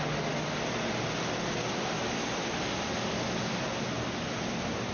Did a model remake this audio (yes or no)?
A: no